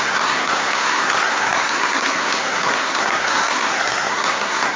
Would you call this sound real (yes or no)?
no